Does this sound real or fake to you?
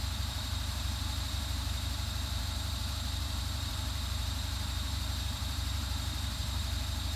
fake